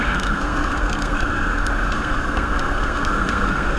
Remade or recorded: remade